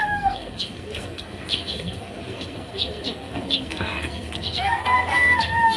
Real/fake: fake